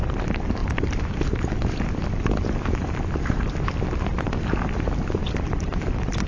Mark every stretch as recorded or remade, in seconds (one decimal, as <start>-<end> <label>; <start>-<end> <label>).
0.0-6.3 recorded